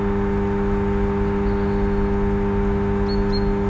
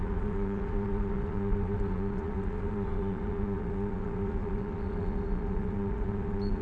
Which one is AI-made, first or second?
second